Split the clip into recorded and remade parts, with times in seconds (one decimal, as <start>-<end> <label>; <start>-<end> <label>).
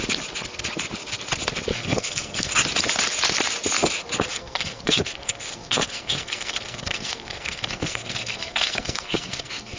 0.0-1.7 recorded; 1.7-2.5 remade; 2.5-4.3 recorded; 4.3-9.8 remade